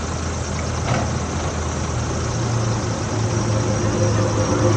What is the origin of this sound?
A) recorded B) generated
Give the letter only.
A